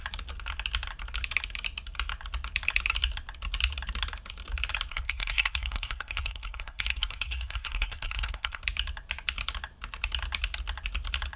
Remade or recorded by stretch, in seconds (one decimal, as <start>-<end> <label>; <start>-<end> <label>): 0.0-4.9 recorded; 4.9-8.6 remade; 8.6-11.4 recorded